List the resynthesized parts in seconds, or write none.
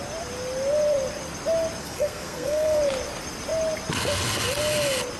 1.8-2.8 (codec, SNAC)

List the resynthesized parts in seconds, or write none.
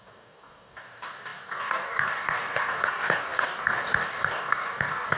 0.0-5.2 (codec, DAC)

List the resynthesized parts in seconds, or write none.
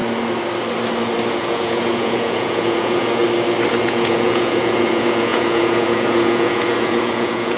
1.3-3.2 (vocoder, Vocos); 3.8-7.6